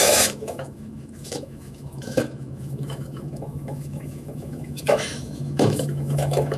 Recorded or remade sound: remade